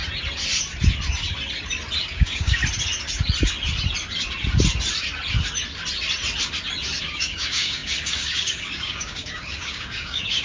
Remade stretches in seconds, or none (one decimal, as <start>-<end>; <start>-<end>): 2.0-2.6; 7.0-10.4